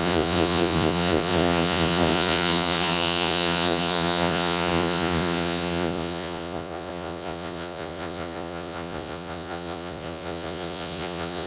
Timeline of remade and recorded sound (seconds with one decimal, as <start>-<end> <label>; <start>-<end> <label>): 0.0-11.5 remade